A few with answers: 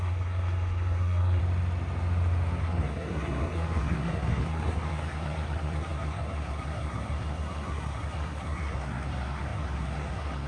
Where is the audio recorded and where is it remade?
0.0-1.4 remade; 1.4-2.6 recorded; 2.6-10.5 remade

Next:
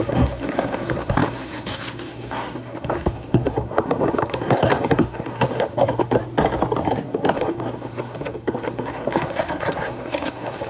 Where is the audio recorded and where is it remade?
0.0-6.2 remade; 6.2-6.8 recorded; 6.8-10.7 remade

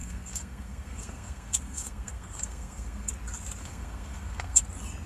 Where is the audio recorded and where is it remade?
0.0-3.1 remade; 3.1-3.6 recorded; 3.6-4.6 remade; 4.6-5.1 recorded